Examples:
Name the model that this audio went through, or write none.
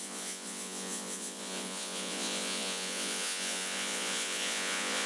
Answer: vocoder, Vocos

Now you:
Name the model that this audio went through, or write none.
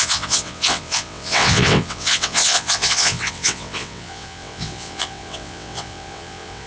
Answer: vocoder, WaveNeXt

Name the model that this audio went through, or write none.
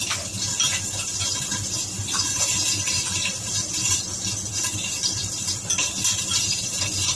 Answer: none